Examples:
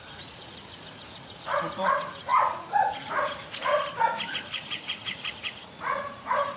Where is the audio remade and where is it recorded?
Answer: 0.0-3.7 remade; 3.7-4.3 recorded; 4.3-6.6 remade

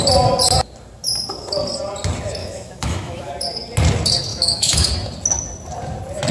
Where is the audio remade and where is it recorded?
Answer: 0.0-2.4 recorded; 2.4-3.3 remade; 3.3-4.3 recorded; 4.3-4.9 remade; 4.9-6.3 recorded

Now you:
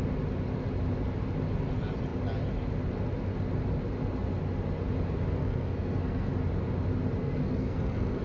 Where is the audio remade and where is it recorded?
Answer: 0.0-5.4 recorded; 5.4-6.3 remade; 6.3-7.2 recorded; 7.2-8.2 remade